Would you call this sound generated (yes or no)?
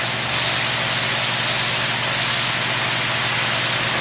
no